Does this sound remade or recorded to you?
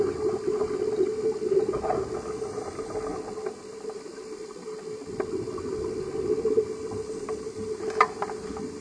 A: recorded